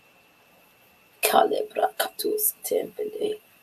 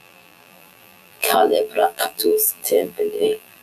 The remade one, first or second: second